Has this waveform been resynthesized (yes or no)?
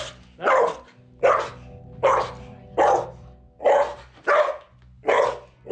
no